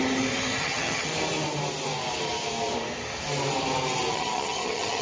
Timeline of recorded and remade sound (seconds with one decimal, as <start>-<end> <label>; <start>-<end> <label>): 0.0-0.6 recorded; 0.6-1.1 remade; 1.1-4.1 recorded; 4.1-5.0 remade